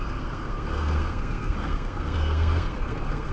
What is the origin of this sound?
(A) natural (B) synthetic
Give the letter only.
B